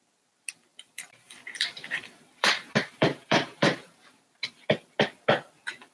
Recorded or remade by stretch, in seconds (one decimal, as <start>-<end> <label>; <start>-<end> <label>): 0.0-0.7 recorded; 0.7-4.2 remade; 4.2-5.9 recorded

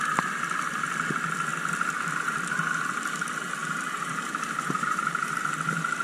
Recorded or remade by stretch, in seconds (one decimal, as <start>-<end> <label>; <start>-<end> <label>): 0.0-3.6 recorded; 3.6-5.3 remade; 5.3-6.0 recorded

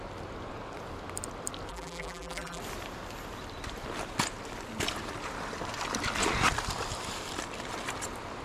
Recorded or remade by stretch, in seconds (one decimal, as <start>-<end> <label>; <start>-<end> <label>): 0.0-1.7 recorded; 1.7-2.6 remade; 2.6-8.4 recorded

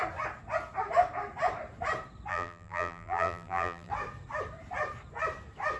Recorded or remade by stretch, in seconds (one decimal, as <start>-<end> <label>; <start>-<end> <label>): 0.0-2.3 recorded; 2.3-3.9 remade; 3.9-5.8 recorded